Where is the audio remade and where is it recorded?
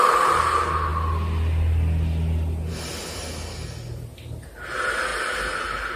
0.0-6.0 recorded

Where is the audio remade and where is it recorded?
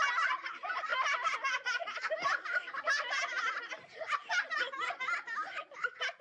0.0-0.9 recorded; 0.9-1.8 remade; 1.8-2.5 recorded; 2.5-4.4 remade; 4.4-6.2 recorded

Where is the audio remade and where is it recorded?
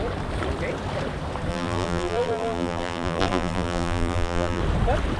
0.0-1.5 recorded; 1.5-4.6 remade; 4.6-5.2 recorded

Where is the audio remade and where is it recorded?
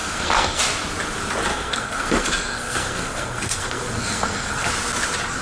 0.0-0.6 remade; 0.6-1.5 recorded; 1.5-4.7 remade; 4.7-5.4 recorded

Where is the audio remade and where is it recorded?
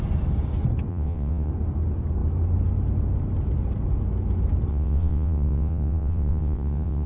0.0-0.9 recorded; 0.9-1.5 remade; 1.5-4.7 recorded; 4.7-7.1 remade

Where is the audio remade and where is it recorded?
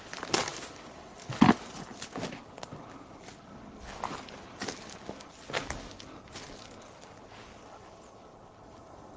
0.0-9.2 recorded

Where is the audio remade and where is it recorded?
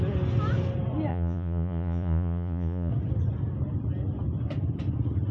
0.0-1.1 recorded; 1.1-2.9 remade; 2.9-5.3 recorded